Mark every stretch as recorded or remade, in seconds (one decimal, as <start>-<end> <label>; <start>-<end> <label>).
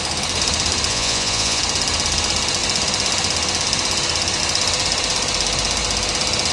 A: 0.0-0.9 recorded; 0.9-1.6 remade; 1.6-6.5 recorded